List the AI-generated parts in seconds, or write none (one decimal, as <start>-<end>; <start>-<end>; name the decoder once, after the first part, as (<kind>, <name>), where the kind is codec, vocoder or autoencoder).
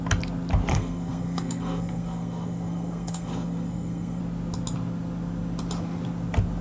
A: 0.7-4.2 (codec, SNAC)